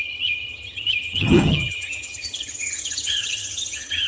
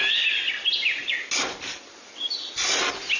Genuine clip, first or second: second